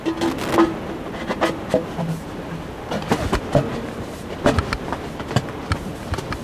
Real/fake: real